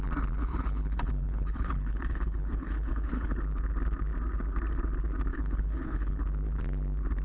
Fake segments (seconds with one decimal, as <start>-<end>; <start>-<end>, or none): 0.4-3.3; 5.3-6.2